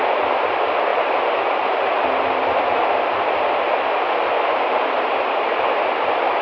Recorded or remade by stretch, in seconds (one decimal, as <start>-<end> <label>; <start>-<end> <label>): 0.0-6.4 recorded